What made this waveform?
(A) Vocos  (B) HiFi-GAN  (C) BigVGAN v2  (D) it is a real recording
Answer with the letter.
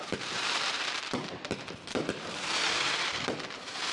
C